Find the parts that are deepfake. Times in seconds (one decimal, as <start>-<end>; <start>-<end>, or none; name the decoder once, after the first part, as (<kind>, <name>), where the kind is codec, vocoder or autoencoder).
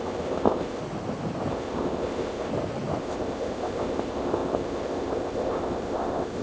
0.0-0.8 (codec, ZipCodec); 1.5-2.5; 3.0-6.4